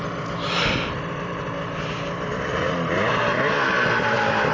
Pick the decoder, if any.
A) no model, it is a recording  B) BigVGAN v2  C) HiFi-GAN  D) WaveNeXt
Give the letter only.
A